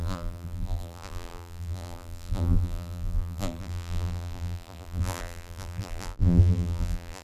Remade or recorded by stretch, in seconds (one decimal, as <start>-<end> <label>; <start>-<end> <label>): 0.0-7.2 remade